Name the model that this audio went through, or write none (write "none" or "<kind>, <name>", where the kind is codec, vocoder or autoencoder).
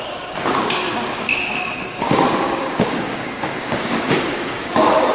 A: codec, DAC